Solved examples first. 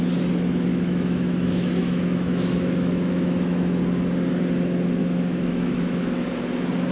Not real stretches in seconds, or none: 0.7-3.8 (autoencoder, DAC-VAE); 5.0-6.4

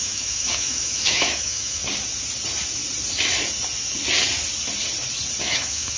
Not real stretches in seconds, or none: 0.0-1.8 (autoencoder, DAC-VAE); 5.4-6.0